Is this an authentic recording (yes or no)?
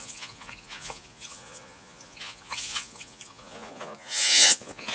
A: no